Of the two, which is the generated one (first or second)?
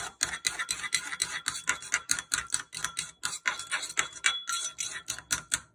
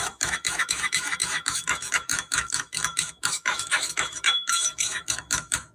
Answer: second